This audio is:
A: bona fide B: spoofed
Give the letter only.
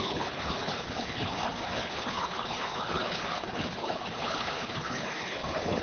B